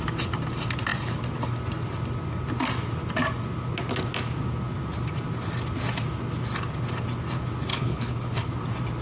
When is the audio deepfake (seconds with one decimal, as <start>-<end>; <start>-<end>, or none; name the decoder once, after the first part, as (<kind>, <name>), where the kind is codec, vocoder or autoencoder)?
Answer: 7.7-8.5 (codec, HILCodec)